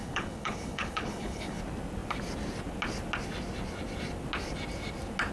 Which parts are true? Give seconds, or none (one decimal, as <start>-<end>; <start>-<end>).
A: 1.6-5.3